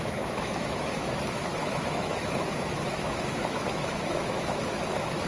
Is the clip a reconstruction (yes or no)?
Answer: yes